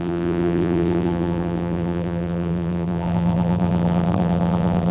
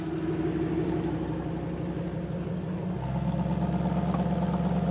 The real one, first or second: second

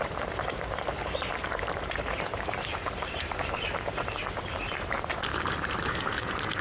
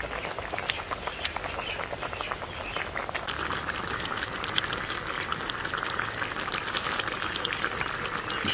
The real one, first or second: second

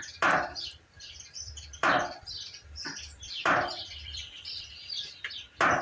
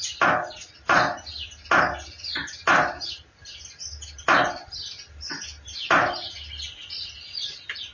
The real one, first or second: second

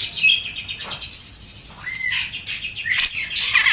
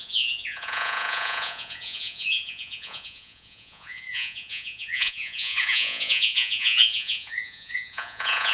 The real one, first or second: first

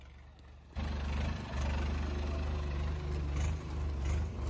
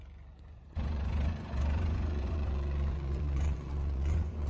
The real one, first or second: first